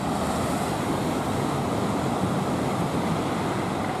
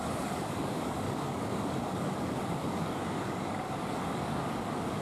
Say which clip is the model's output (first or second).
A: second